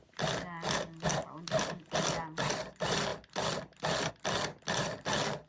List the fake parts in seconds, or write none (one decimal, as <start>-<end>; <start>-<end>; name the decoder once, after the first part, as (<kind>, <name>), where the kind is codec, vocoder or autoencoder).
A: none